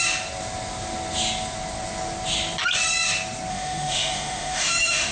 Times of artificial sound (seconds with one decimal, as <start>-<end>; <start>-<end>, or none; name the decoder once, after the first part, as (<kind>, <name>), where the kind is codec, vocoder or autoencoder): 3.5-5.1 (autoencoder, DAC-VAE)